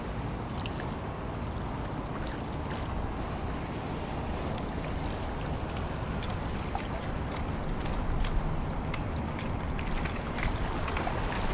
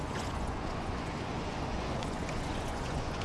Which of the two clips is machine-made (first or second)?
second